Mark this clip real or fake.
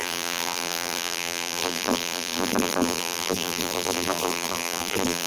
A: fake